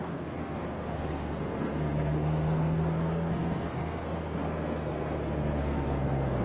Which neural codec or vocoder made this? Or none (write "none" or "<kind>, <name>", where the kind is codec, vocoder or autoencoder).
codec, SNAC